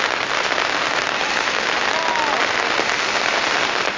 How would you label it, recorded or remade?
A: recorded